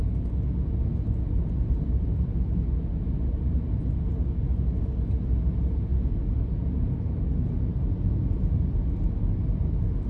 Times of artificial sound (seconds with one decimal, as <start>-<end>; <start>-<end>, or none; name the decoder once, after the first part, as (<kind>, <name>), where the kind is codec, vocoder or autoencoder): none